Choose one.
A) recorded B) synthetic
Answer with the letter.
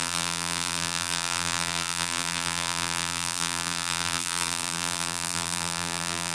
B